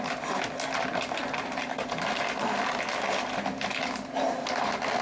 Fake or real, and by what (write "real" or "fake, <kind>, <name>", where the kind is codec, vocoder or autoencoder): real